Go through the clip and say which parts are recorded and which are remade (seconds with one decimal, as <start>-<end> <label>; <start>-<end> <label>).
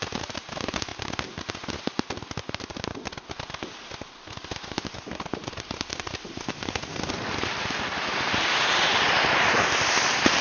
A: 0.0-10.4 recorded